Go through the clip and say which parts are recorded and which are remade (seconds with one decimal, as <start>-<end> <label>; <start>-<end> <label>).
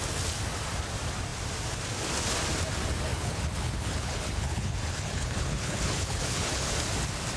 0.0-3.1 recorded; 3.1-6.7 remade; 6.7-7.4 recorded